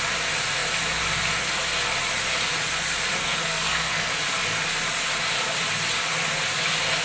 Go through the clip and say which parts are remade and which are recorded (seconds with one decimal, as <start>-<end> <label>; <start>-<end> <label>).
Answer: 0.0-3.2 recorded; 3.2-4.1 remade; 4.1-7.0 recorded

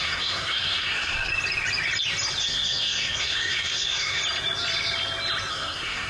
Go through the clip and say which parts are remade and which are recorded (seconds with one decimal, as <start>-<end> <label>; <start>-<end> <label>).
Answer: 0.0-1.3 remade; 1.3-2.4 recorded; 2.4-4.2 remade; 4.2-5.5 recorded; 5.5-6.1 remade

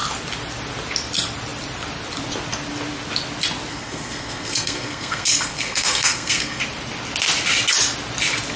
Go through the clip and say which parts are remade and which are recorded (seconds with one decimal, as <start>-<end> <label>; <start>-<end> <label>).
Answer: 0.0-3.7 recorded; 3.7-6.6 remade; 6.6-8.6 recorded

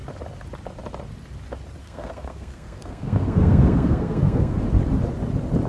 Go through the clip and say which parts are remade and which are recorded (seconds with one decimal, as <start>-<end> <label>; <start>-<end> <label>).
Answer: 0.0-1.8 recorded; 1.8-4.6 remade; 4.6-5.7 recorded